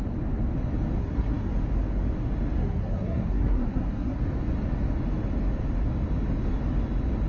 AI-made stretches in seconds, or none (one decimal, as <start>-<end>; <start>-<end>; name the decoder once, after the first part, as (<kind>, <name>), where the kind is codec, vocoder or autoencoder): 1.0-1.5 (codec, SNAC); 2.6-4.2